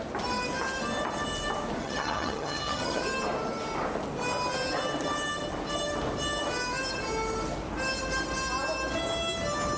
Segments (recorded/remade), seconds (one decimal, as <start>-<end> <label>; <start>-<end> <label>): 0.0-1.8 recorded; 1.8-3.0 remade; 3.0-9.8 recorded